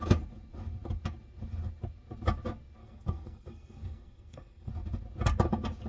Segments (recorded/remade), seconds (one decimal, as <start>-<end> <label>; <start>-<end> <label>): 0.0-2.8 recorded; 2.8-4.7 remade; 4.7-5.9 recorded